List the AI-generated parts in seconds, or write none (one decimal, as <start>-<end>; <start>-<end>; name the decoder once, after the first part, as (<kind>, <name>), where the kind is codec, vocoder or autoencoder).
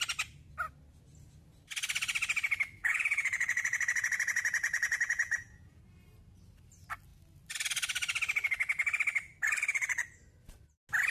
2.8-5.8 (vocoder, Vocos)